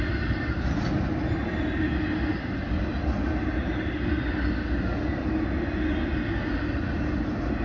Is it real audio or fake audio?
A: real